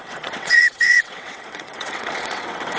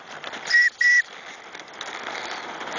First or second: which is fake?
first